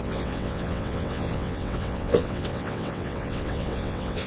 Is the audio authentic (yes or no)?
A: no